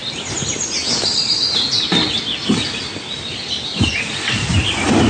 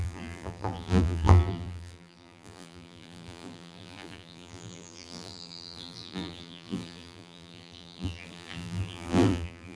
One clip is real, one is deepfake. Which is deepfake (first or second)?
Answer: second